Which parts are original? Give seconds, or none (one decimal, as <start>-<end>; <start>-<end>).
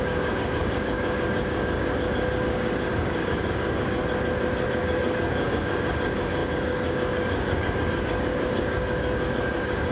4.0-4.7